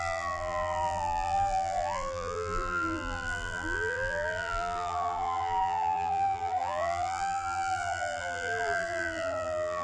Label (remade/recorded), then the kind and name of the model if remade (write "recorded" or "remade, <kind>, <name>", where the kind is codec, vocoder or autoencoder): remade, vocoder, BigVGAN v2